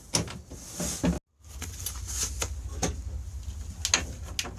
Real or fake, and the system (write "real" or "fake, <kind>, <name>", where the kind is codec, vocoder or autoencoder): real